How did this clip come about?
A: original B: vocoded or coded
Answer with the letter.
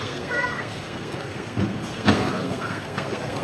B